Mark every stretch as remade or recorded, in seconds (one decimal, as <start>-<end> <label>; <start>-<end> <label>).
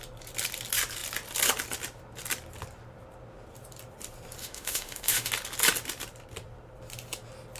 0.0-4.4 recorded; 4.4-5.3 remade; 5.3-7.6 recorded